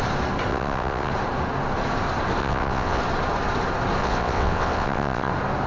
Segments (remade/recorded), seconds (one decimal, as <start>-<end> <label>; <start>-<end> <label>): 0.0-0.5 recorded; 0.5-1.1 remade; 1.1-2.4 recorded; 2.4-3.0 remade; 3.0-4.0 recorded; 4.0-5.3 remade; 5.3-5.7 recorded

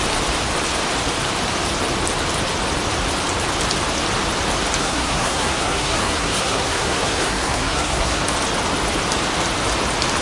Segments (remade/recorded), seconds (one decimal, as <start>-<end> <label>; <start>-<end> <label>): 0.0-4.8 recorded; 4.8-8.2 remade; 8.2-10.2 recorded

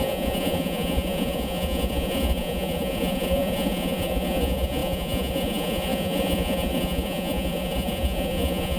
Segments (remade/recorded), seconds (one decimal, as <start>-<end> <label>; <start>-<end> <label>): 0.0-8.8 remade

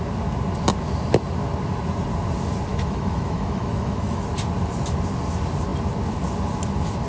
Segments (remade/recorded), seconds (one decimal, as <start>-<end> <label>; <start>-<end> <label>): 0.0-2.7 recorded; 2.7-4.3 remade; 4.3-7.1 recorded

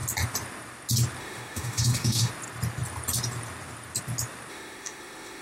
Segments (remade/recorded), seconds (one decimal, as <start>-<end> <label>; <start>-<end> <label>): 0.0-1.2 recorded; 1.2-2.3 remade; 2.3-4.5 recorded; 4.5-5.4 remade

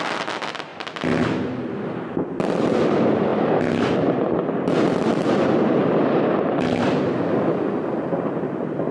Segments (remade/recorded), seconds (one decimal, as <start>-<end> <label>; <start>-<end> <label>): 0.0-8.9 recorded

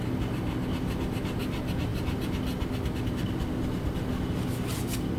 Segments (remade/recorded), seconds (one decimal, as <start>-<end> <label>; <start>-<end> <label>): 0.0-5.2 recorded